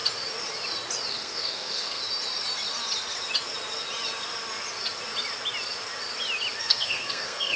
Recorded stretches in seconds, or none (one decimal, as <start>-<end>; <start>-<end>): 0.0-1.1; 2.0-6.6